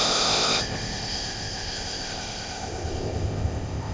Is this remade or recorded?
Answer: remade